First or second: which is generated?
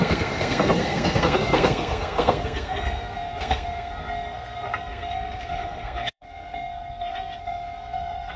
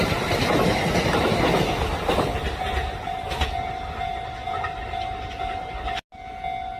first